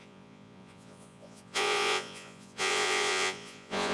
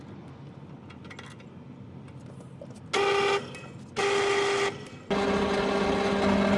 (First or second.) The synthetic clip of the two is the first